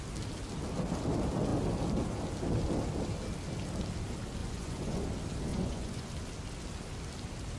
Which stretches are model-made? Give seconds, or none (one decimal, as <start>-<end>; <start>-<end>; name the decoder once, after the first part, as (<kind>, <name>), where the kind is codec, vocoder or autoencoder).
4.4-5.0 (vocoder, Vocos); 5.5-6.1